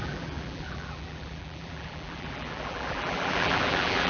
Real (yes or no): no